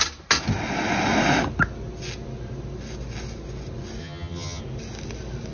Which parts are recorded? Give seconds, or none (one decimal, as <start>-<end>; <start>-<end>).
0.0-4.0; 4.6-5.5